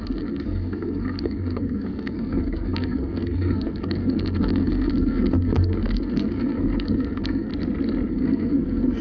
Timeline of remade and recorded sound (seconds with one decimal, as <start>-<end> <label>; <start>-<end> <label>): 0.0-7.5 remade; 7.5-8.1 recorded; 8.1-9.0 remade